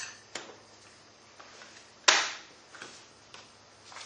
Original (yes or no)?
yes